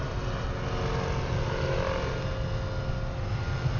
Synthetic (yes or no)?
no